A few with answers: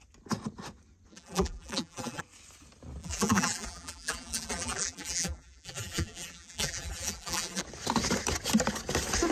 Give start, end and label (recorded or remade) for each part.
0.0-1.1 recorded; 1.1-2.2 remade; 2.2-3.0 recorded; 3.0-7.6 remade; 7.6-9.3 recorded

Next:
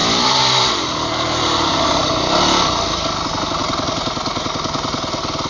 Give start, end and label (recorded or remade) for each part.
0.0-1.7 remade; 1.7-5.5 recorded

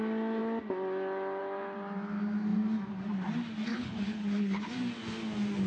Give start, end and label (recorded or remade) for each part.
0.0-3.7 recorded; 3.7-4.7 remade; 4.7-5.7 recorded

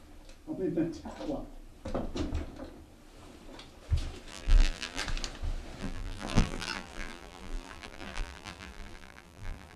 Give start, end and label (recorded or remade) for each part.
0.0-4.3 recorded; 4.3-5.0 remade; 5.0-5.8 recorded; 5.8-9.8 remade

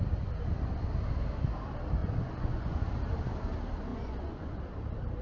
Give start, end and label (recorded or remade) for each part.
0.0-2.0 recorded; 2.0-2.8 remade; 2.8-3.9 recorded; 3.9-4.6 remade; 4.6-5.2 recorded

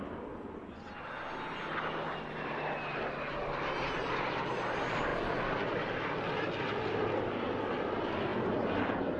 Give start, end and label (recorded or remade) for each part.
0.0-9.2 recorded